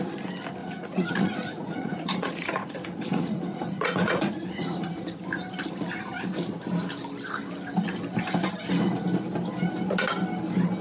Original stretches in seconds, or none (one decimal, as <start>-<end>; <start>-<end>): 0.0-0.6; 4.9-10.8